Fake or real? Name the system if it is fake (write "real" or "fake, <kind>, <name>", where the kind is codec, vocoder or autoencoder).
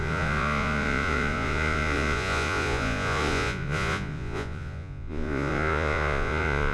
fake, vocoder, Vocos